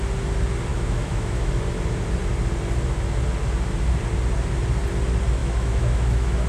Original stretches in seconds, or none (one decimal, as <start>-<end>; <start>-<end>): 0.0-0.7; 1.5-5.4